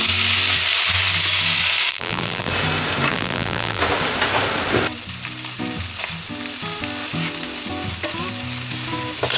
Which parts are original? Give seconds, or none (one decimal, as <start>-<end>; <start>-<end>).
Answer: 0.0-1.9; 2.5-3.1; 3.8-9.4

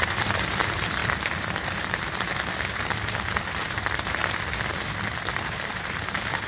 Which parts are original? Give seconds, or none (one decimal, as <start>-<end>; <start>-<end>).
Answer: 1.0-1.8; 2.3-3.6; 4.2-5.4

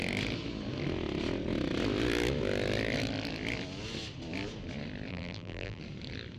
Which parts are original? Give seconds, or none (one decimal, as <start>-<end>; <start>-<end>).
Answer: 0.0-5.1; 5.8-6.4